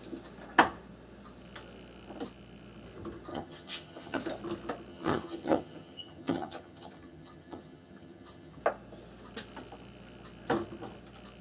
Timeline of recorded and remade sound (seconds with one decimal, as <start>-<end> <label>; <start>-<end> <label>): 0.0-3.3 recorded; 3.3-4.2 remade; 4.2-4.9 recorded; 4.9-8.6 remade; 8.6-11.4 recorded